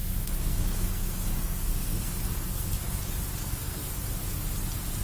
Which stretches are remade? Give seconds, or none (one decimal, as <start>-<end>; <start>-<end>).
0.0-3.0; 3.4-4.0